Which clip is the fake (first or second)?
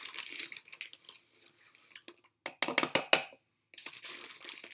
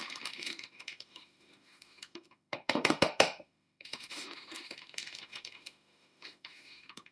second